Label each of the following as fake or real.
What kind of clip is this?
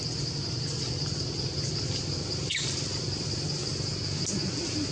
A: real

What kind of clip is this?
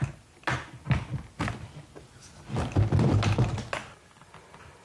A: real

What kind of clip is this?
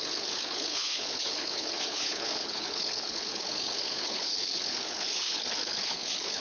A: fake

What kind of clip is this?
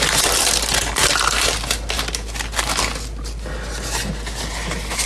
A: real